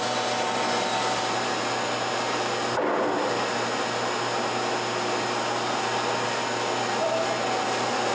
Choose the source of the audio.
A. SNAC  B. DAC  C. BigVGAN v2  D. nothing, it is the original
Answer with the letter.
D